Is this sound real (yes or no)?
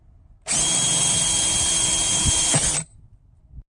yes